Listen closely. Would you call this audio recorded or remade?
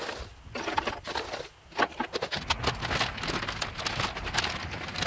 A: recorded